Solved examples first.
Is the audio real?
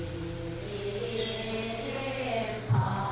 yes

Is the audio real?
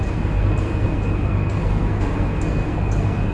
no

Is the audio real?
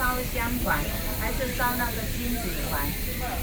yes